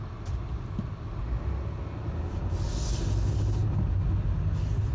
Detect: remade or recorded recorded